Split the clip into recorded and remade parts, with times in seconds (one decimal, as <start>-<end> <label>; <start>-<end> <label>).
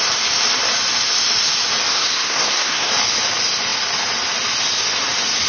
0.0-1.9 recorded; 1.9-2.9 remade; 2.9-5.5 recorded